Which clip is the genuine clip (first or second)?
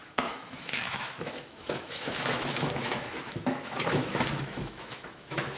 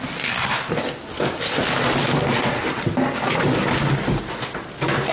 second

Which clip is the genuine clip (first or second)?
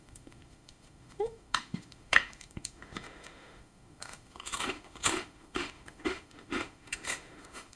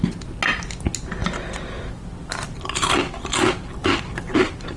second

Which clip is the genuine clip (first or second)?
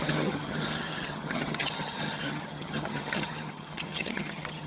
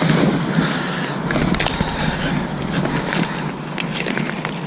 second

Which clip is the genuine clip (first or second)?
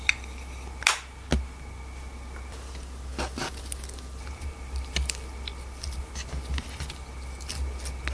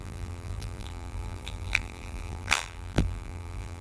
first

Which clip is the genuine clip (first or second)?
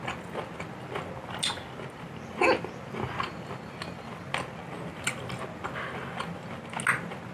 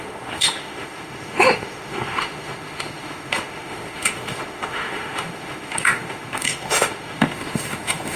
first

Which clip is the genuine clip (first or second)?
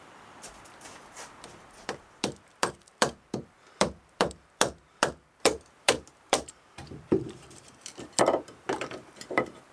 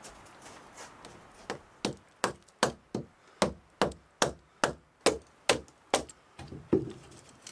second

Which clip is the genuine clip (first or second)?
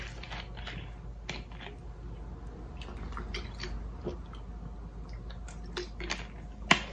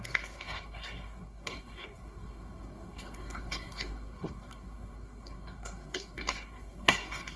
first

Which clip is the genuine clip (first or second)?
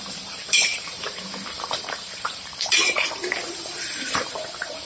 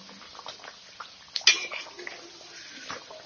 second